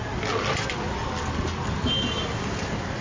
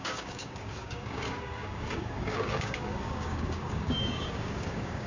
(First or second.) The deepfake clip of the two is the second